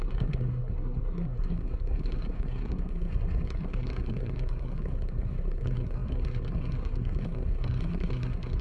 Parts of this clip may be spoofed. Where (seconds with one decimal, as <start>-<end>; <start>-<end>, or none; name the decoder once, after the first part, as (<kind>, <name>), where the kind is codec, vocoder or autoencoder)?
0.0-8.6 (codec, SNAC)